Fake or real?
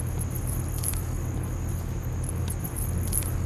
real